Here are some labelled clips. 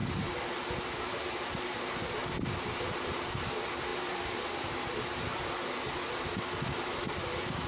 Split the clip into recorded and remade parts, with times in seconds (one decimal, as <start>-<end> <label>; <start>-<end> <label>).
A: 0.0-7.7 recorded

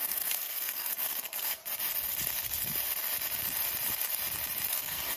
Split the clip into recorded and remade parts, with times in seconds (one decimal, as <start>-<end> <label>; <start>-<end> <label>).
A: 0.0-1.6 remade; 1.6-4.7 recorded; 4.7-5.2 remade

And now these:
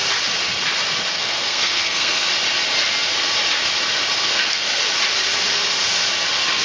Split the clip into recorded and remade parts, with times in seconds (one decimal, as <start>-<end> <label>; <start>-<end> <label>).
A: 0.0-1.1 recorded; 1.1-2.3 remade; 2.3-4.2 recorded; 4.2-4.8 remade; 4.8-6.6 recorded

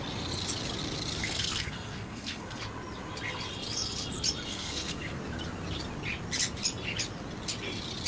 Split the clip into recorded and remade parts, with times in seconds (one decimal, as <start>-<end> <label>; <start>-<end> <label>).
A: 0.0-1.2 recorded; 1.2-2.6 remade; 2.6-4.5 recorded; 4.5-5.2 remade; 5.2-8.1 recorded

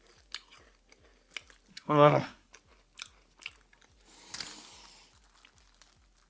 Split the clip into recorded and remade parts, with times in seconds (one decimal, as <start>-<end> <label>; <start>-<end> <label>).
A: 0.0-1.7 recorded; 1.7-2.5 remade; 2.5-6.3 recorded

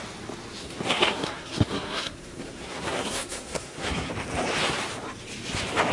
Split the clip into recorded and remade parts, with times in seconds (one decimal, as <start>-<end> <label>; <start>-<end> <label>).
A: 0.0-0.6 recorded; 0.6-4.1 remade; 4.1-5.9 recorded